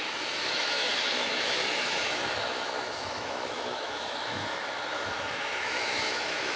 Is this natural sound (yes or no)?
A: no